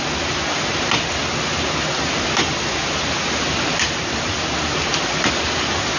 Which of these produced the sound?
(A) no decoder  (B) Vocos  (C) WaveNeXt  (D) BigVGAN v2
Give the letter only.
A